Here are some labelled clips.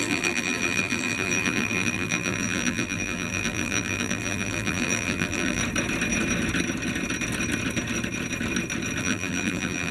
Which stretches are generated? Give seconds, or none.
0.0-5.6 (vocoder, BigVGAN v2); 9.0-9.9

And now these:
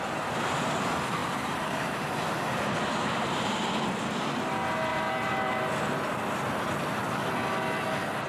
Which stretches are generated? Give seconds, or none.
1.2-2.1 (vocoder, BigVGAN v2); 3.0-3.6; 4.9-5.7

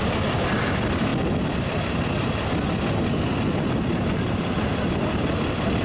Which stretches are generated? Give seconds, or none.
none